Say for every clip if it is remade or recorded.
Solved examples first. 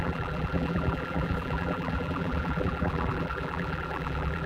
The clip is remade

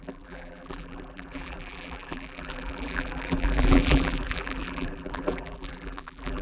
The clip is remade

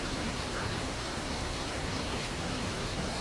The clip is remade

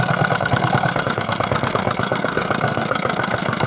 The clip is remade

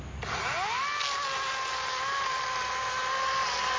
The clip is recorded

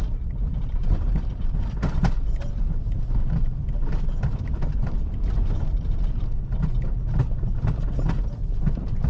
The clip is remade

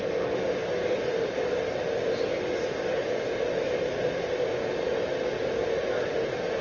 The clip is recorded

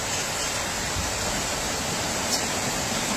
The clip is recorded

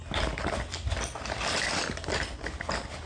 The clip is recorded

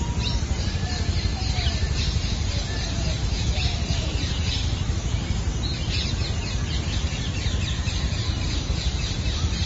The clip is remade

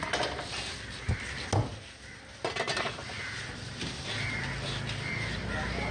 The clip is recorded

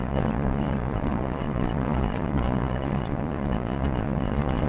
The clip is remade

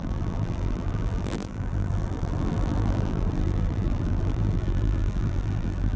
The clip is remade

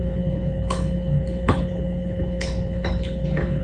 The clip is remade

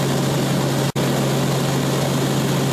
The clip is recorded